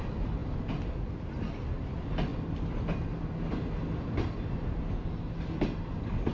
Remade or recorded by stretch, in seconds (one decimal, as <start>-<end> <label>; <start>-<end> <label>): 0.0-6.3 recorded